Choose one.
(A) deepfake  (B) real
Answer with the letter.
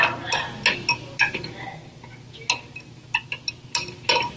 B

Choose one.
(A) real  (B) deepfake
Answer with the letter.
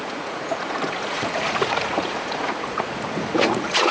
B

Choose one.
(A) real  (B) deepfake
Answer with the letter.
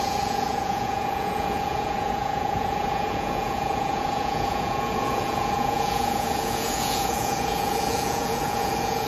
B